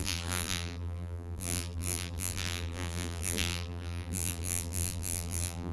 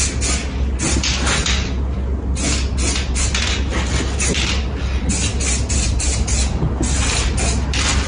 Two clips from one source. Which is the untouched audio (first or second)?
second